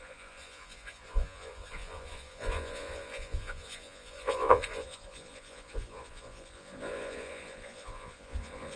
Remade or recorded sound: remade